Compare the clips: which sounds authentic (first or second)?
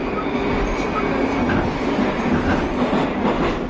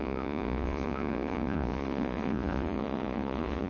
first